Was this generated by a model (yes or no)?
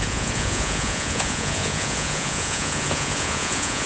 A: yes